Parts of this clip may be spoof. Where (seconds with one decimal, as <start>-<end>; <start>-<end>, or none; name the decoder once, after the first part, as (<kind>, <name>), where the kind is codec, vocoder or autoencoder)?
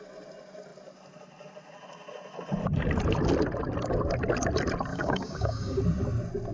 4.9-5.8 (codec, DAC)